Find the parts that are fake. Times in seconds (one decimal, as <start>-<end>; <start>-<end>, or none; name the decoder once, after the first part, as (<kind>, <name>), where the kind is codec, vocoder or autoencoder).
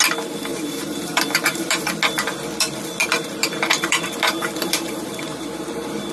0.5-1.9 (vocoder, BigVGAN v2); 3.0-6.1